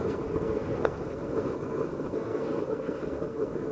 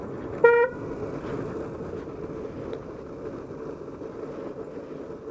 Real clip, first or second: second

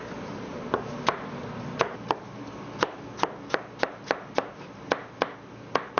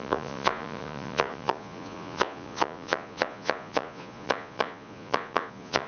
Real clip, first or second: first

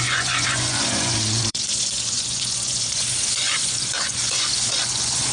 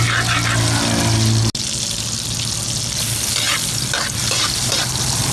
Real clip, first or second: second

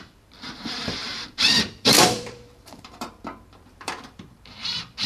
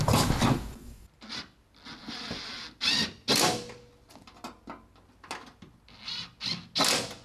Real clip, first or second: second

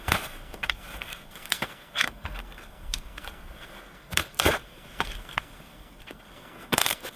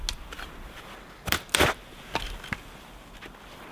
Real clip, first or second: second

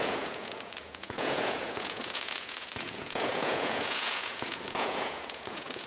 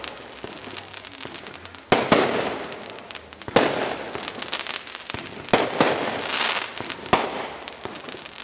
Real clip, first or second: second